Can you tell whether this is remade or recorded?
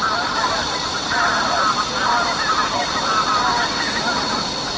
recorded